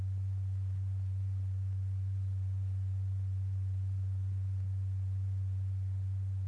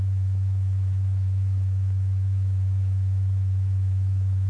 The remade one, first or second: second